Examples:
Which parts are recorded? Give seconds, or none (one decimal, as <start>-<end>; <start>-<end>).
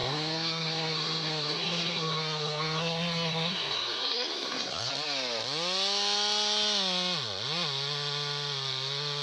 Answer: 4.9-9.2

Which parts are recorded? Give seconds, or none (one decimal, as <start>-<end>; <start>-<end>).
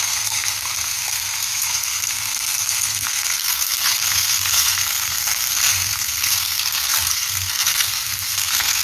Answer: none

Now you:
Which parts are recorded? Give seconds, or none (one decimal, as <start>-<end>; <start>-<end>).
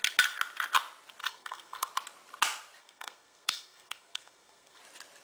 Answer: 0.0-1.2; 1.9-2.8; 4.8-5.2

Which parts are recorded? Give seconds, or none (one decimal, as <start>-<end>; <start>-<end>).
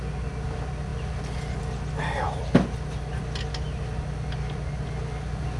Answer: 0.0-5.6